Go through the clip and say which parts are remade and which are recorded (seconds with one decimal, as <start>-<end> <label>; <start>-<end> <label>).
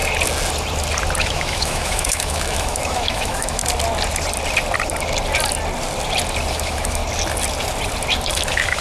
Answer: 0.0-1.2 recorded; 1.2-3.6 remade; 3.6-6.5 recorded; 6.5-7.0 remade; 7.0-8.3 recorded; 8.3-8.8 remade